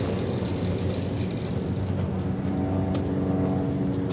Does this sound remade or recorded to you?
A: recorded